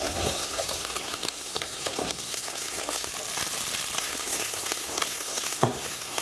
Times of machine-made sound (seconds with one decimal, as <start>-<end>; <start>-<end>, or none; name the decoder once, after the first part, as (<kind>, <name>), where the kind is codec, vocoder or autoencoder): 0.0-3.1 (codec, SNAC); 4.0-6.2